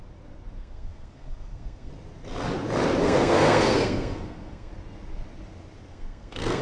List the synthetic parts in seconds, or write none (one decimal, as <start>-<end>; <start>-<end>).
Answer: 0.6-1.9; 3.0-4.7; 5.9-6.6